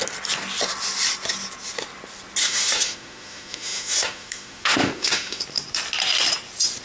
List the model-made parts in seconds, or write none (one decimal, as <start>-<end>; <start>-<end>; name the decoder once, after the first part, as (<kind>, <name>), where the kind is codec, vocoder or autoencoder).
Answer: 2.4-5.4 (autoencoder, DAC-VAE)